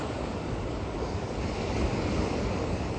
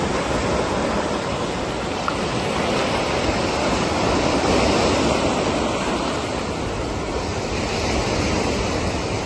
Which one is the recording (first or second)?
second